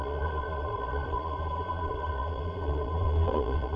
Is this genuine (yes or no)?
no